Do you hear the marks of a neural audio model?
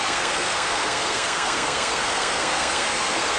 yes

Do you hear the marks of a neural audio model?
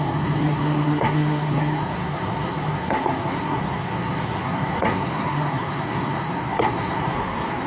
yes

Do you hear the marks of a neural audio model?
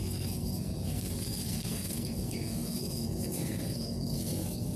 yes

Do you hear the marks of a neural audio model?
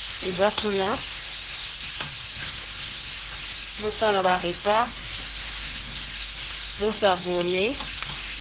yes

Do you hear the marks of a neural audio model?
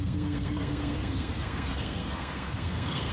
yes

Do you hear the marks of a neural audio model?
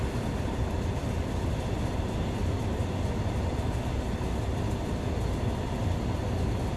no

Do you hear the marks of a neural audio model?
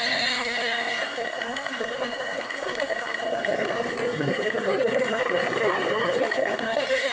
yes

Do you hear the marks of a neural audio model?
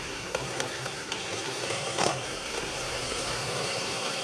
yes